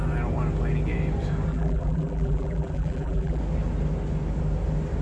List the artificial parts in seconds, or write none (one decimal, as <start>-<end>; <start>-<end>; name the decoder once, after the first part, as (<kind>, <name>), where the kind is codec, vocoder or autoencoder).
1.5-3.4 (vocoder, BigVGAN v2)